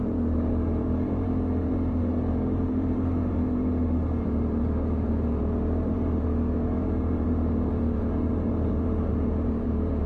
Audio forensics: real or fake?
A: fake